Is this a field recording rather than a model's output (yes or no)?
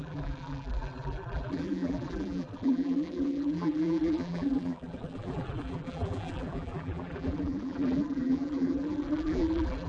no